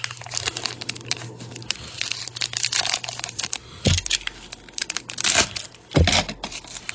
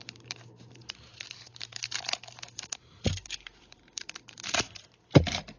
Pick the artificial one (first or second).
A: second